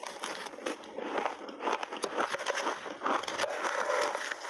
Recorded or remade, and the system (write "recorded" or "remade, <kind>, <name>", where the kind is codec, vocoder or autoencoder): recorded